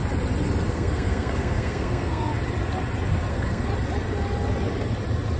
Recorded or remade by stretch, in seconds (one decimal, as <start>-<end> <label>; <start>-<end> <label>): 0.0-0.7 recorded; 0.7-2.3 remade; 2.3-3.3 recorded; 3.3-3.7 remade; 3.7-5.4 recorded